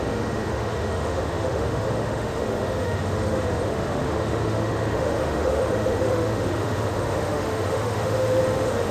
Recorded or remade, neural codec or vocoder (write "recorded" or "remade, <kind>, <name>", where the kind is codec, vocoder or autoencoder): remade, autoencoder, DAC-VAE